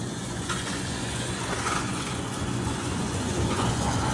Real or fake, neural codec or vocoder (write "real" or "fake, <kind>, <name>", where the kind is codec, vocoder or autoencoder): fake, vocoder, Vocos